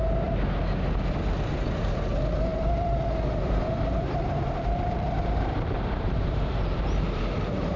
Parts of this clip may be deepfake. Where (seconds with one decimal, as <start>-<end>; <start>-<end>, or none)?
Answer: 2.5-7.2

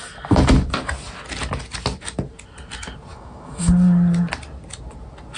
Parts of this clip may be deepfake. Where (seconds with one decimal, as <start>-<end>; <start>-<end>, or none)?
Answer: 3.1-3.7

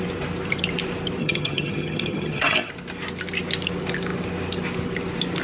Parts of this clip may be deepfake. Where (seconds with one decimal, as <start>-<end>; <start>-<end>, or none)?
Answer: 1.2-2.7

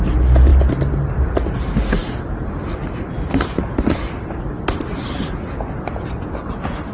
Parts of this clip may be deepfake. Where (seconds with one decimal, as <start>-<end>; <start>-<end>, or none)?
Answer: none

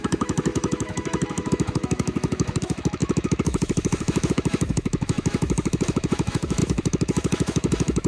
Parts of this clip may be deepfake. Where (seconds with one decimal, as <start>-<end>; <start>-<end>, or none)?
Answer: 0.0-8.1